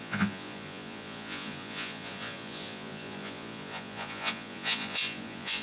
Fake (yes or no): yes